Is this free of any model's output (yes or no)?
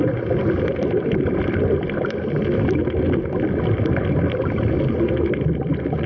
yes